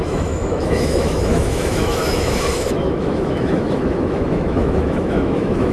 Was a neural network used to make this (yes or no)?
yes